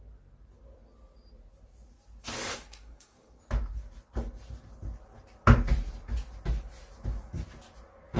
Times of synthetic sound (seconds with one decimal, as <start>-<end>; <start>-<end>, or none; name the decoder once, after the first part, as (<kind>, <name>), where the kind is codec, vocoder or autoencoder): 2.5-3.4 (codec, SNAC)